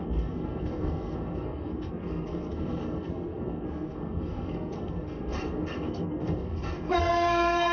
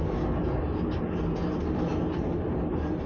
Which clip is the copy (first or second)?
first